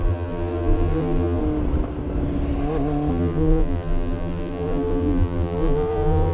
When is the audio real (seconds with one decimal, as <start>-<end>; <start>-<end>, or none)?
1.4-3.1